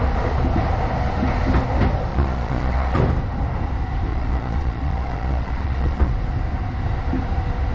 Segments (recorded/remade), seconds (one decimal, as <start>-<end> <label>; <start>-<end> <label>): 0.0-2.1 recorded; 2.1-3.0 remade; 3.0-4.1 recorded; 4.1-6.1 remade; 6.1-7.7 recorded